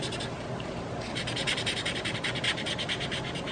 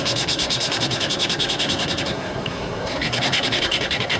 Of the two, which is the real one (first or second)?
first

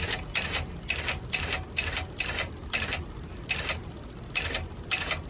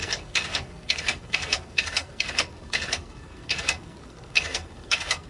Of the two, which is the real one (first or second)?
first